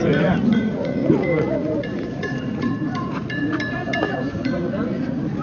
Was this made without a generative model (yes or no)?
no